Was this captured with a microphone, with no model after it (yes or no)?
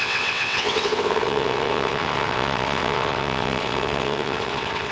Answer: no